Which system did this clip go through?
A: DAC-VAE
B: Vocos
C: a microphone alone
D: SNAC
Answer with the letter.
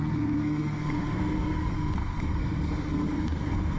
D